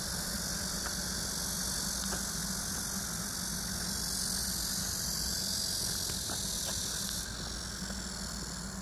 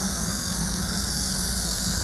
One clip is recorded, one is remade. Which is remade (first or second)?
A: second